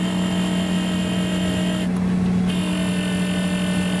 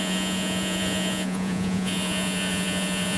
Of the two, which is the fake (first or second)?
second